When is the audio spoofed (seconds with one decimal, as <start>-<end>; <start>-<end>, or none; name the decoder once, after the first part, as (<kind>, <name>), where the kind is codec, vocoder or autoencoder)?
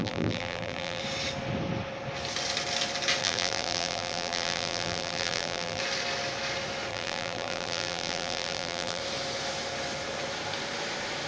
0.0-1.0 (vocoder, BigVGAN v2); 3.2-5.8; 6.9-9.0